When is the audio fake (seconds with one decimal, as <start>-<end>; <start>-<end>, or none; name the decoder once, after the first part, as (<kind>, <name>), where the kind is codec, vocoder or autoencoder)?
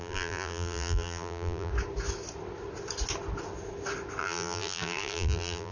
0.0-1.7 (vocoder, BigVGAN v2); 4.2-5.7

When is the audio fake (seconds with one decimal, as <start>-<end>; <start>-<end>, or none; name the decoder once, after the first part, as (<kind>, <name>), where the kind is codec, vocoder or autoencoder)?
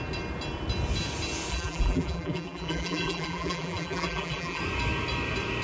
1.5-4.6 (vocoder, BigVGAN v2)